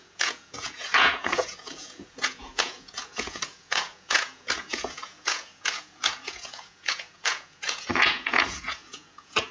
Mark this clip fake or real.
fake